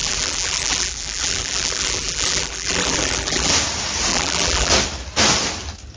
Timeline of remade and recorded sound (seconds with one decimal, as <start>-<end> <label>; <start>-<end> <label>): 0.0-3.5 remade; 3.5-4.1 recorded; 4.1-4.7 remade; 4.7-6.0 recorded